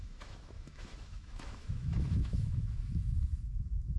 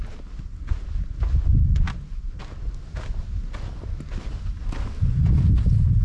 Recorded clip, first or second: second